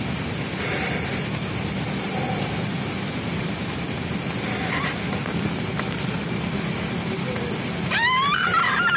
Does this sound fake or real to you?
real